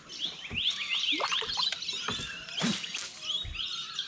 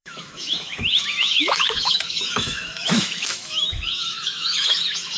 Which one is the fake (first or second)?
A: second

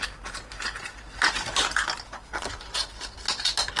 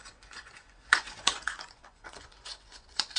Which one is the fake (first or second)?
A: second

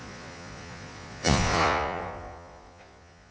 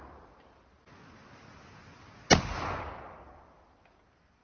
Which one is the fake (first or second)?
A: first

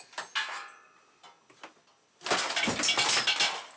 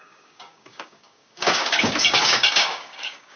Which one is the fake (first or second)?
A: second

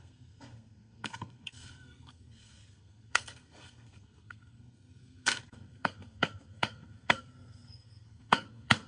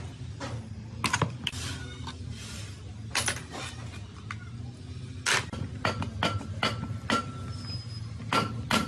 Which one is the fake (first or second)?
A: first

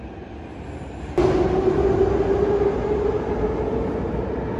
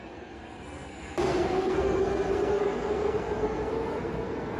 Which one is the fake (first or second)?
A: second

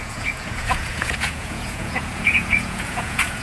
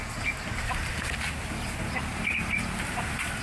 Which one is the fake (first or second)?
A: first